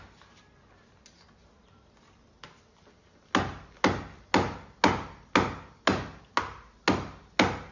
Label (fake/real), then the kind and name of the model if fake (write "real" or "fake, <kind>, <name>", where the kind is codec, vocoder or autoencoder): real